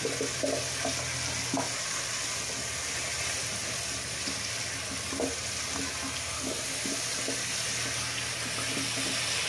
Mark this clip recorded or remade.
recorded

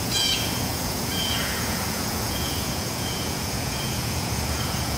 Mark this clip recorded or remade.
remade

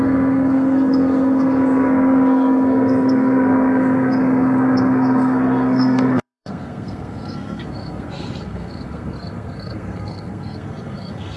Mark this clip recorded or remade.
remade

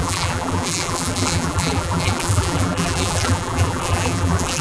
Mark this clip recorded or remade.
remade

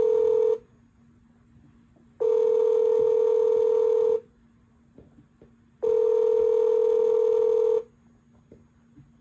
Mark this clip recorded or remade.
recorded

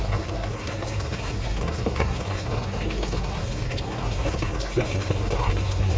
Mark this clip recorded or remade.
remade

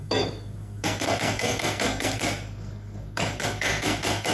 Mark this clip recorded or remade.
remade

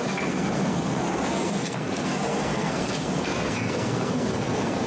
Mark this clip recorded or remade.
remade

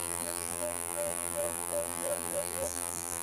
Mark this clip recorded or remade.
remade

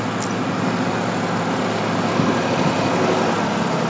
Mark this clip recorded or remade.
recorded